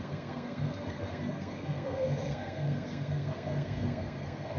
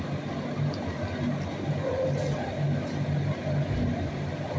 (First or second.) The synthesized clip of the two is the first